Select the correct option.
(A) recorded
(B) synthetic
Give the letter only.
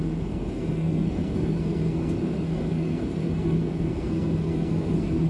B